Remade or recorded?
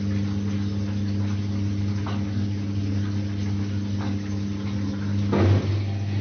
recorded